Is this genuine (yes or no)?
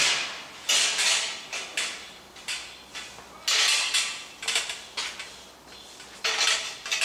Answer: yes